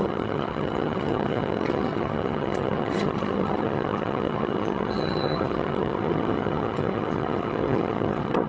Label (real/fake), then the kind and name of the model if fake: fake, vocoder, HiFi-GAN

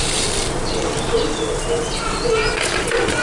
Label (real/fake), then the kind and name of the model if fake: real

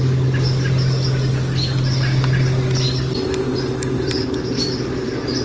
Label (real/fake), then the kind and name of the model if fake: real